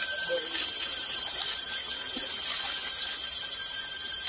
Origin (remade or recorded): recorded